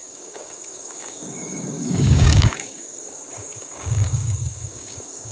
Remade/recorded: remade